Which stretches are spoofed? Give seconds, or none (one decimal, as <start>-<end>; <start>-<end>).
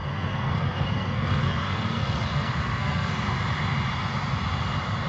0.0-3.1